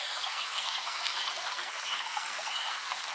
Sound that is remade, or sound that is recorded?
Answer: remade